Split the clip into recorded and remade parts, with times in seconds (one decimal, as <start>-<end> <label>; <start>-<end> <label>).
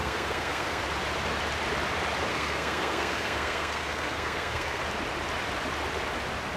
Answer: 0.0-0.8 remade; 0.8-2.3 recorded; 2.3-4.8 remade; 4.8-6.6 recorded